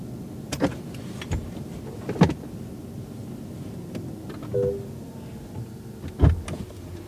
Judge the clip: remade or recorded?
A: recorded